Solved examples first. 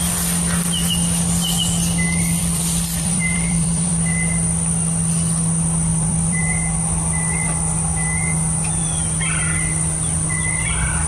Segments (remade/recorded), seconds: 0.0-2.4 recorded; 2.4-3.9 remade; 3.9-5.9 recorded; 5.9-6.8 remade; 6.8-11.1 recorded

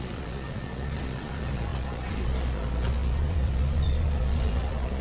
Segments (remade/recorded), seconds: 0.0-5.0 remade

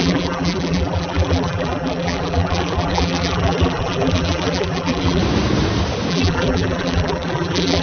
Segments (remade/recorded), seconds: 0.0-5.2 remade; 5.2-6.1 recorded; 6.1-7.8 remade